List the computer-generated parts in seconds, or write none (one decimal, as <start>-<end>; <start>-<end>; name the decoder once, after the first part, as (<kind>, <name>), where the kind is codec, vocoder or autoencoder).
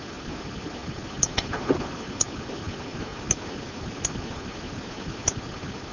none